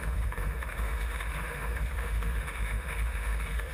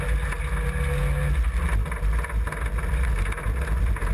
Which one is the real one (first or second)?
second